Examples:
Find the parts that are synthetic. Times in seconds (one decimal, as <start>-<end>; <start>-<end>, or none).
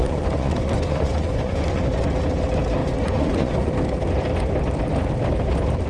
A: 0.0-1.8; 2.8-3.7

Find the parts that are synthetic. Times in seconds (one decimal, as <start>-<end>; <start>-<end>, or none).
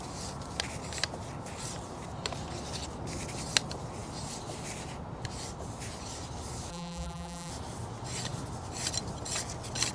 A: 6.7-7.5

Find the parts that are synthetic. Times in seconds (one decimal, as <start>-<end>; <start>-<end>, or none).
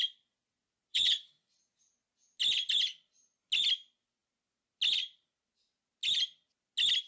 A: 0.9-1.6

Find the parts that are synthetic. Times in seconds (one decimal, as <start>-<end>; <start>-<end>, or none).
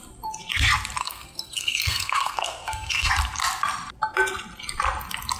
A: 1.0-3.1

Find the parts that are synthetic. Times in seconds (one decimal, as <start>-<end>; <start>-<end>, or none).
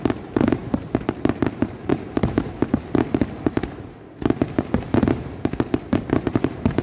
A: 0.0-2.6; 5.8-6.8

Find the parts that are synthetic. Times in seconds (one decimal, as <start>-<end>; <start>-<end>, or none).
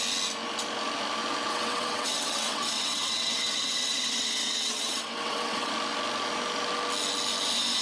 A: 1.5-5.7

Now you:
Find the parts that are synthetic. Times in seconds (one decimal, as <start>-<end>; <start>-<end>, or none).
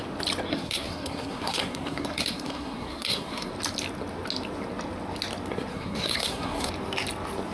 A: 0.5-3.5; 5.7-6.7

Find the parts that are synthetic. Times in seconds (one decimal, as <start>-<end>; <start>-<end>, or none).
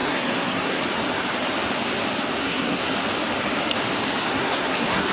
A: 0.0-0.8; 2.4-2.9; 4.3-5.1